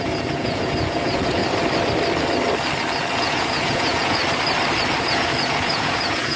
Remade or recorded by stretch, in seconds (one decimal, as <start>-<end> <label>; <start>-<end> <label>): 0.0-1.4 remade; 1.4-3.1 recorded; 3.1-4.2 remade; 4.2-5.0 recorded; 5.0-6.4 remade